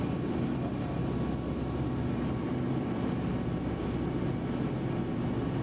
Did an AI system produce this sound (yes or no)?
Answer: no